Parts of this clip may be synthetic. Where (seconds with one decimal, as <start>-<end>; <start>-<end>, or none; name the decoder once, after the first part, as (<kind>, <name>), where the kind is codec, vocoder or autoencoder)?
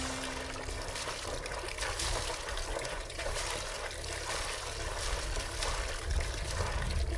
2.7-3.3 (vocoder, Vocos)